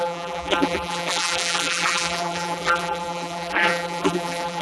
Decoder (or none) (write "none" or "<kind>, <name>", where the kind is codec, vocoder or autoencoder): vocoder, BigVGAN v2